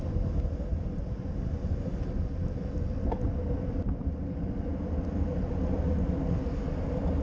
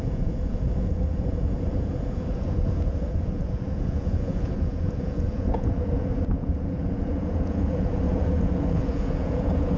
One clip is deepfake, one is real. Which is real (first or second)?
first